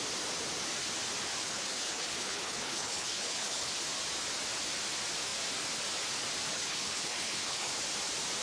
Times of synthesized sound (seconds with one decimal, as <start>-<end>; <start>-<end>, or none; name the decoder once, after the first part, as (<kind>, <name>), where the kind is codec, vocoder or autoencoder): 1.4-3.7 (codec, HILCodec); 6.5-7.7

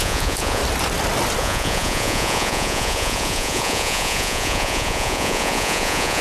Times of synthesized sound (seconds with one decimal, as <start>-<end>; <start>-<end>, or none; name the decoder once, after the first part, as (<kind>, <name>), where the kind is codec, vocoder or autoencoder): 0.0-0.6 (vocoder, Vocos); 1.4-6.2

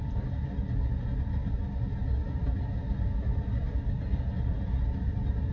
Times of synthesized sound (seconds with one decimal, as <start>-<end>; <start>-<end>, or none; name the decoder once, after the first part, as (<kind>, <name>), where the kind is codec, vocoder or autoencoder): none

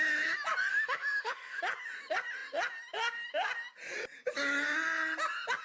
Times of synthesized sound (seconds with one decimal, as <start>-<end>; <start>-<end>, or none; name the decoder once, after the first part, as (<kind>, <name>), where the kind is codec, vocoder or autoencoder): 0.7-1.6 (autoencoder, DAC-VAE)

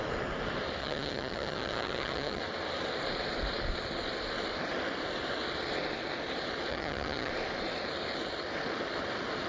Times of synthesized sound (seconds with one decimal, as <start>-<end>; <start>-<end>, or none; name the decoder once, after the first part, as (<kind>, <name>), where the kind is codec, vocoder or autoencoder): 0.8-2.4 (vocoder, HiFi-GAN); 6.7-7.3

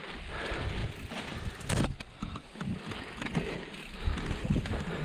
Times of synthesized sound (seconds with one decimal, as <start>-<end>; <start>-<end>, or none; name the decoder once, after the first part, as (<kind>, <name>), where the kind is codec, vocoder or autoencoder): none

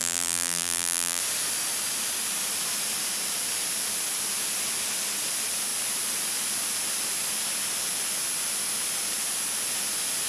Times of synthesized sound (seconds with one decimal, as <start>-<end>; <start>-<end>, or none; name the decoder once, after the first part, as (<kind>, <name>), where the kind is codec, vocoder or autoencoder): 0.0-1.2 (vocoder, BigVGAN v2)

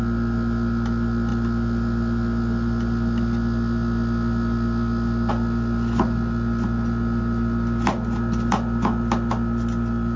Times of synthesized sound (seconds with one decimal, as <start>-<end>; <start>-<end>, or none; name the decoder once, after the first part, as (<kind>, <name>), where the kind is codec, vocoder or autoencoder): none